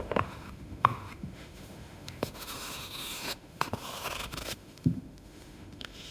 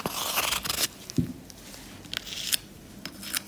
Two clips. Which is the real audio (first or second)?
second